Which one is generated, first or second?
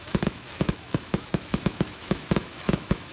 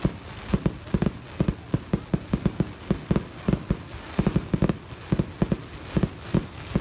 first